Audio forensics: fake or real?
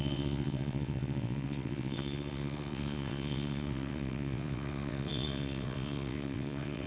fake